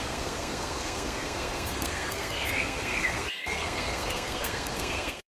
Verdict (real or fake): fake